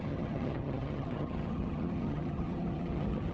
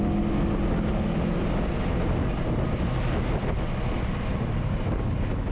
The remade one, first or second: first